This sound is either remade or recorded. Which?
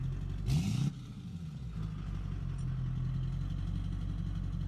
recorded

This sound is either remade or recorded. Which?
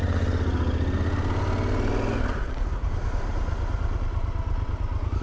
recorded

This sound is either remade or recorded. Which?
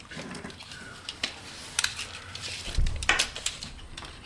remade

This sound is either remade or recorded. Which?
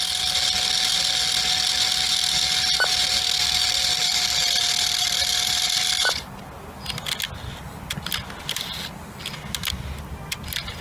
recorded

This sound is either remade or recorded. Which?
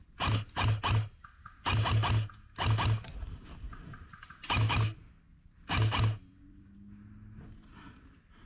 recorded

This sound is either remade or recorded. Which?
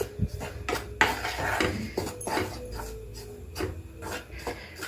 recorded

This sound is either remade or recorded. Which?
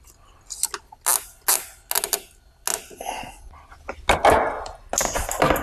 recorded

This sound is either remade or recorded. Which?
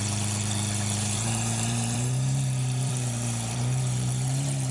remade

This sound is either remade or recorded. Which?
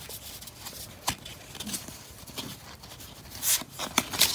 remade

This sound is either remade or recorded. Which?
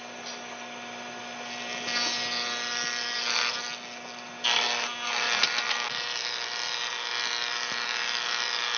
recorded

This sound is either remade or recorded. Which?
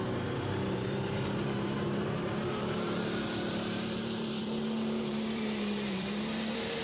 remade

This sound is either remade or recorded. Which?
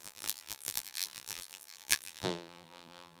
remade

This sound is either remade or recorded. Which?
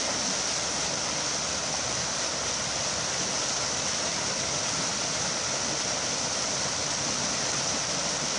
recorded